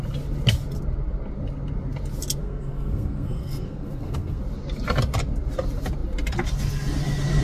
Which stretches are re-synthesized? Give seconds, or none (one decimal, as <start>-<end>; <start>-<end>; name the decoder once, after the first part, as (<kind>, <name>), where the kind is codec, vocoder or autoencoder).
2.4-4.4 (codec, SNAC)